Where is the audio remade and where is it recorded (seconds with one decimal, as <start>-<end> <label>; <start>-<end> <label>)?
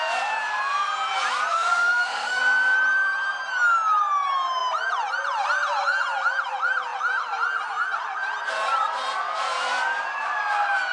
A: 0.0-1.5 recorded; 1.5-2.4 remade; 2.4-10.9 recorded